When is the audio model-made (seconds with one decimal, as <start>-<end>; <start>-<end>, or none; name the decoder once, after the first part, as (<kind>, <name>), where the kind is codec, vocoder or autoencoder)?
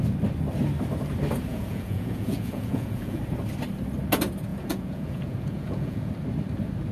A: 1.5-3.2 (vocoder, Vocos); 4.5-6.1